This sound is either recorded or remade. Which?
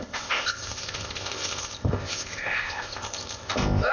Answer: remade